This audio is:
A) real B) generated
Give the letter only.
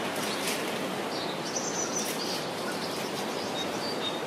A